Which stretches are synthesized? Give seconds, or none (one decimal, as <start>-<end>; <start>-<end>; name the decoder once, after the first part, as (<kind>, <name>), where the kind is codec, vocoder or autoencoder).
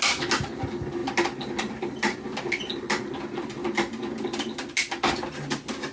none